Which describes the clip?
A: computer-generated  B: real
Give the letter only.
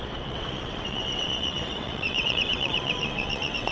A